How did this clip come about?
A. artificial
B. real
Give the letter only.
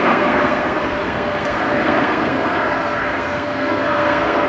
A